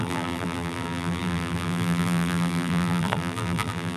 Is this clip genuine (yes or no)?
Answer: no